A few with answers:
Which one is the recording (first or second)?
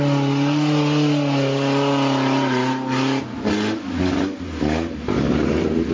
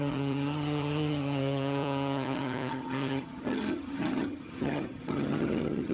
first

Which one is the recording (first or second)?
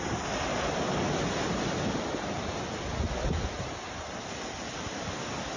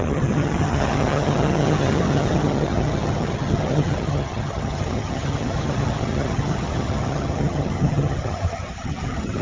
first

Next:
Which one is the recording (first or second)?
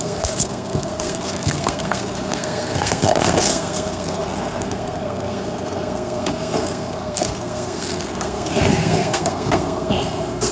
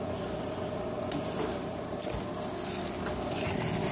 second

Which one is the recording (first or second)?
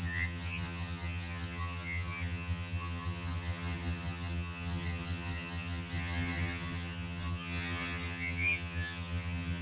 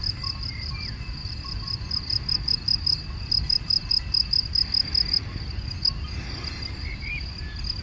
second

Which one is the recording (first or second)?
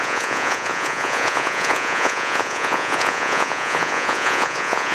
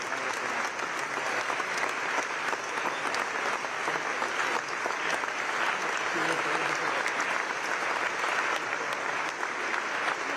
second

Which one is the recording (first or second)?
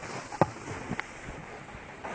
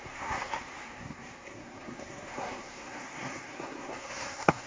first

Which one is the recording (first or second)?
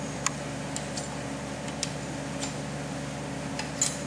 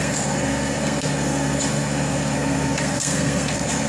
first